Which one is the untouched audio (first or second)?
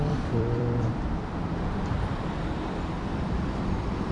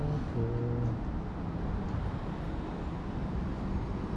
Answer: second